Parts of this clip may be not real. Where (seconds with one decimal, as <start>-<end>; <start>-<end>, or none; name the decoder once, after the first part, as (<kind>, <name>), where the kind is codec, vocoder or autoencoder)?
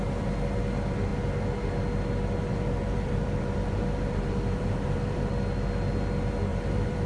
2.5-5.3 (vocoder, BigVGAN v2); 6.5-7.1